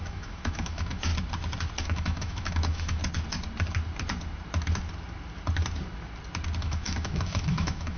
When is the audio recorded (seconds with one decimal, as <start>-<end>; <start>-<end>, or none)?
1.1-1.8; 3.0-6.6